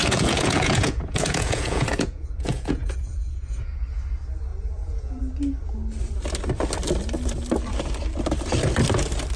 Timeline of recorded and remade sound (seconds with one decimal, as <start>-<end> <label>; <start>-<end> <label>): 0.0-3.7 remade; 3.7-4.5 recorded; 4.5-5.2 remade; 5.2-9.4 recorded